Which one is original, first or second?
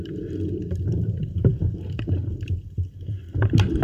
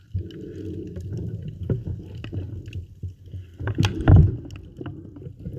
second